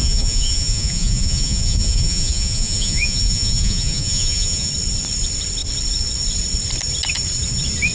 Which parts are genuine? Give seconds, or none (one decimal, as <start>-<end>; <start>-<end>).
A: 4.7-7.9